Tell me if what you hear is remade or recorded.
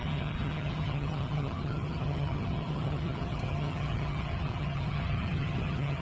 remade